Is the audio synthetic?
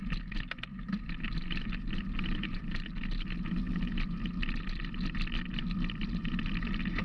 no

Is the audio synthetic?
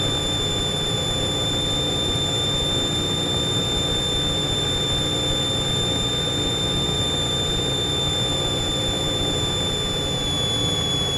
yes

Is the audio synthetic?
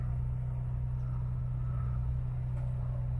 no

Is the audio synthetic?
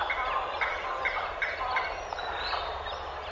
no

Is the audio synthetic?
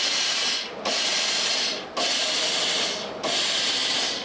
no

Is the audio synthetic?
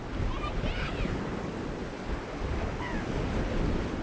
yes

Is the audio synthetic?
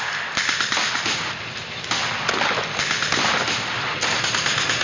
no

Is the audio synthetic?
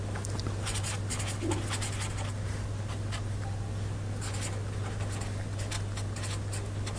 no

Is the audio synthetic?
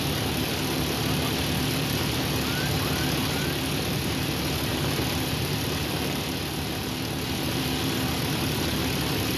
no